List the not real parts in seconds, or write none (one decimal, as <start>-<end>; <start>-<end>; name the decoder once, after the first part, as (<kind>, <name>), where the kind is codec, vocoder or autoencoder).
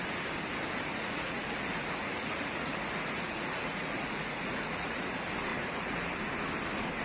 0.9-5.1 (vocoder, Vocos); 5.5-6.1